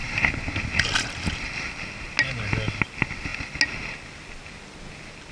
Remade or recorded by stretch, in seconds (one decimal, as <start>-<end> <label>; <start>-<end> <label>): 0.0-5.3 recorded